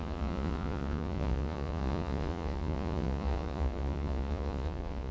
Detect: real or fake fake